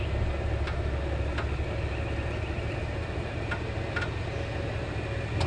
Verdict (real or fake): real